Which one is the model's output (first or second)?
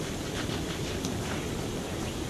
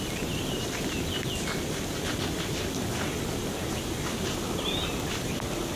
first